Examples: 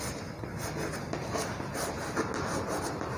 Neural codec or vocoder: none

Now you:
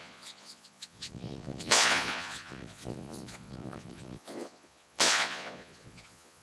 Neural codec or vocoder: vocoder, Vocos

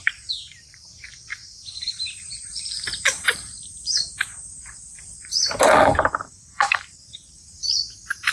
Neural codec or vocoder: vocoder, BigVGAN v2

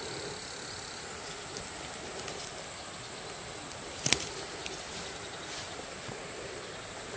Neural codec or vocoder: none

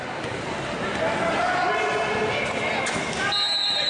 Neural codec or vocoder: none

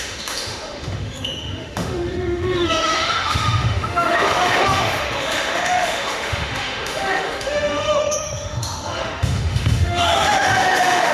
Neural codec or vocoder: autoencoder, DAC-VAE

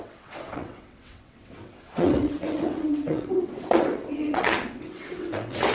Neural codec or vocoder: vocoder, WaveNeXt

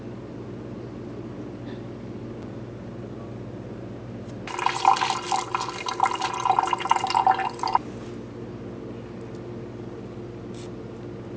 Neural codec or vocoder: none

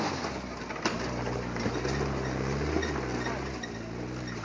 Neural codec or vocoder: none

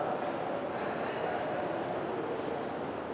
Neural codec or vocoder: none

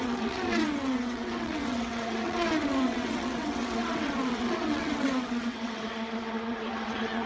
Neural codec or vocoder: vocoder, WaveNeXt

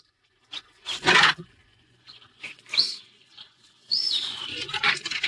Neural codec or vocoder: vocoder, Vocos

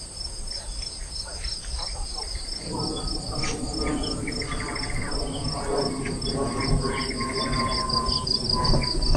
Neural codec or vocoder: none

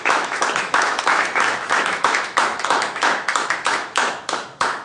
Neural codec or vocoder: autoencoder, DAC-VAE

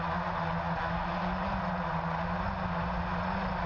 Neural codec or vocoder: none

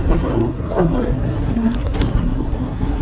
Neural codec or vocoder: codec, SNAC